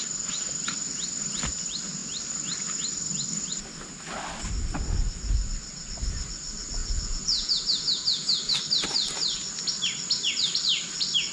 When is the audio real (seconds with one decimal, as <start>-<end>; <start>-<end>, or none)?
0.0-6.8; 8.5-11.3